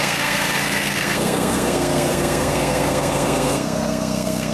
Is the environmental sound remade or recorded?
remade